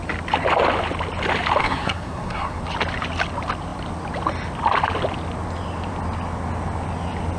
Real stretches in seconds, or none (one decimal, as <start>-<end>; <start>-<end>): 0.0-1.6; 2.6-7.4